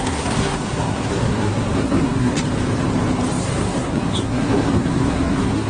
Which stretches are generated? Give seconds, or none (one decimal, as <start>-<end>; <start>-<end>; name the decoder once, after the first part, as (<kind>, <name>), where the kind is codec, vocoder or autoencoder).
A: 0.0-2.4 (codec, SNAC); 3.4-5.7